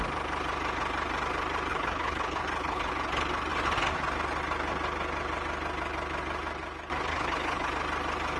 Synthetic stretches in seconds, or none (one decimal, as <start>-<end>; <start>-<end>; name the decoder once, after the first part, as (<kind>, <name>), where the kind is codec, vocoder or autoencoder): 1.7-2.9 (codec, HILCodec); 7.1-7.7